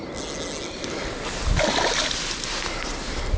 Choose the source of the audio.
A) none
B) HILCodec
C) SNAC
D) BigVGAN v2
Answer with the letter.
A